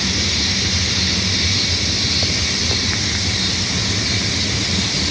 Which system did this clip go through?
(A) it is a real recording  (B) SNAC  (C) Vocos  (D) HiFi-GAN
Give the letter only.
A